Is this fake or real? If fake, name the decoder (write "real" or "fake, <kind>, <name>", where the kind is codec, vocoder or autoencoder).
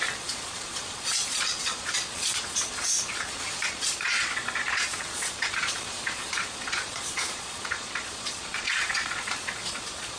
fake, vocoder, Vocos